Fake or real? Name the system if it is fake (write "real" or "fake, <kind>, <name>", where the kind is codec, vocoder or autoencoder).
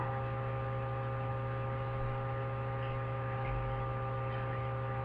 real